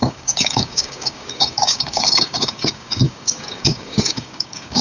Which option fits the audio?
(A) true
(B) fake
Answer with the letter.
B